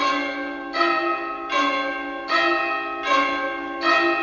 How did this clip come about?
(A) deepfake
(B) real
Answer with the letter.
B